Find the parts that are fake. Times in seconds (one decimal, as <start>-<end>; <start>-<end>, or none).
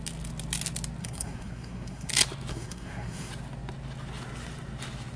1.0-2.1; 2.5-3.3